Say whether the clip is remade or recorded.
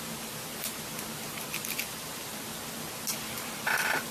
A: remade